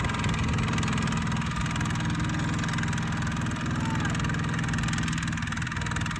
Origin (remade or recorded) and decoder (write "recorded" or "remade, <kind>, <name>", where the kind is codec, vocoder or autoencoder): recorded